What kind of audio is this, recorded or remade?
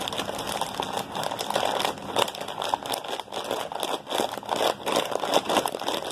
recorded